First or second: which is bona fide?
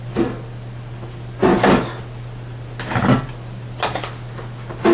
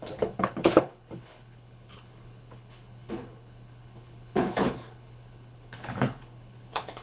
first